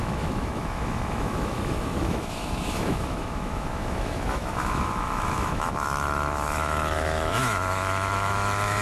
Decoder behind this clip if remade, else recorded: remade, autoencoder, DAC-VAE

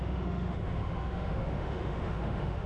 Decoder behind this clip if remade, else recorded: remade, autoencoder, DAC-VAE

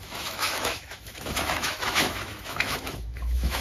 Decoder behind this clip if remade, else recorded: remade, autoencoder, DAC-VAE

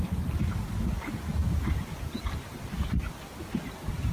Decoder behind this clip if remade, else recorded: recorded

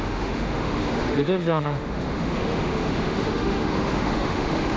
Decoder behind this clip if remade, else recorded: remade, autoencoder, DAC-VAE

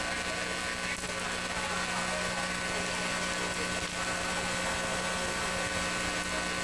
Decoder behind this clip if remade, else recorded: recorded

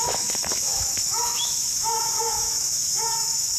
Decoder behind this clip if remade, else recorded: remade, autoencoder, DAC-VAE